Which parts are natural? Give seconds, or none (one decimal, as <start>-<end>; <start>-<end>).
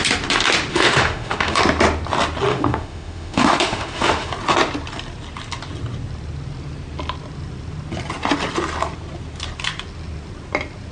0.0-0.7; 1.6-2.5; 4.3-10.9